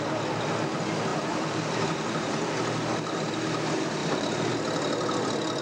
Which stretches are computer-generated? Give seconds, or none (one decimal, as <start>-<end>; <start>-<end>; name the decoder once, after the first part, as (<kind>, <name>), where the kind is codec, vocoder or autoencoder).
1.1-2.3 (vocoder, BigVGAN v2); 4.0-4.5